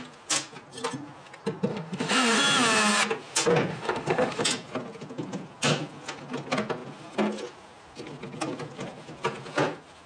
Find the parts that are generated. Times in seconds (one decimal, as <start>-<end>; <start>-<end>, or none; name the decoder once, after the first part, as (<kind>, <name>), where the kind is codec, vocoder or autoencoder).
1.7-2.4 (autoencoder, DAC-VAE); 3.7-4.4